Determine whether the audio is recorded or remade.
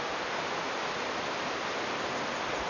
recorded